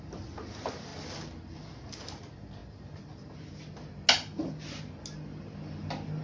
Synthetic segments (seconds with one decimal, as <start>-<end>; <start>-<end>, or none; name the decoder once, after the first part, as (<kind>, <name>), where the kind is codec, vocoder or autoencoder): none